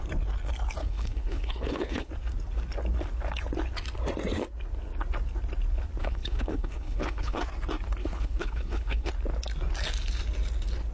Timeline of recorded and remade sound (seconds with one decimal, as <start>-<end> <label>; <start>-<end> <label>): 0.0-0.8 recorded; 0.8-2.1 remade; 2.1-6.0 recorded; 6.0-7.4 remade; 7.4-8.0 recorded; 8.0-9.1 remade; 9.1-10.9 recorded